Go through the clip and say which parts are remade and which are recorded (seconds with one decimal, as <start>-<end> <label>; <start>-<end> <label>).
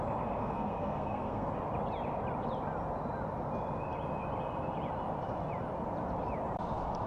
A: 0.0-0.4 recorded; 0.4-1.5 remade; 1.5-7.1 recorded